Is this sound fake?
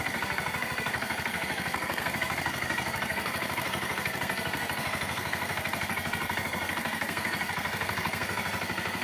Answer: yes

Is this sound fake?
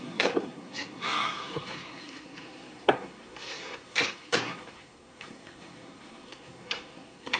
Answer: yes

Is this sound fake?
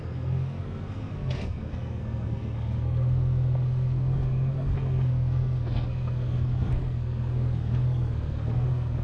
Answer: yes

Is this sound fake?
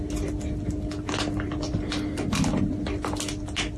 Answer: no